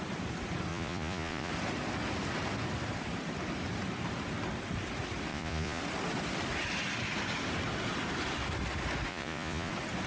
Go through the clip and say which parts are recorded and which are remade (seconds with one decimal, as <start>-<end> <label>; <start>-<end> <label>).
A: 0.0-0.7 recorded; 0.7-1.5 remade; 1.5-5.3 recorded; 5.3-5.8 remade; 5.8-9.1 recorded; 9.1-9.7 remade; 9.7-10.1 recorded